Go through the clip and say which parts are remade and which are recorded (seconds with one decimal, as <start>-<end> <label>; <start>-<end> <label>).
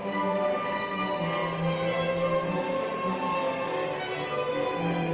0.0-5.1 recorded